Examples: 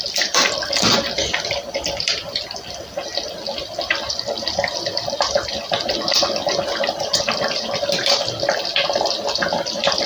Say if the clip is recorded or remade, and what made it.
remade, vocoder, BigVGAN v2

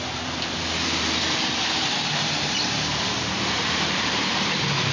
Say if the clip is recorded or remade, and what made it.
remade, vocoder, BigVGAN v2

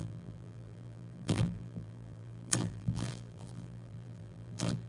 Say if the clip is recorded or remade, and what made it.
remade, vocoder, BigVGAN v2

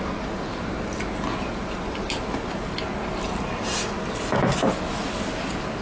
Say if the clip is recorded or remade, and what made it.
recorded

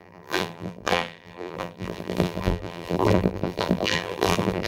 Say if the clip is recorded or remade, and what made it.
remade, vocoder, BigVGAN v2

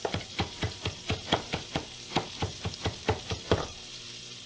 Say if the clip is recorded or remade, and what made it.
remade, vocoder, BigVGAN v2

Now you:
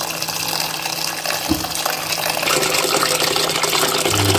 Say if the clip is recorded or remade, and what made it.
recorded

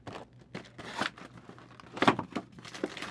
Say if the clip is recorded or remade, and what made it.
recorded